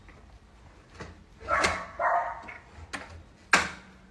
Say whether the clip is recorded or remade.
recorded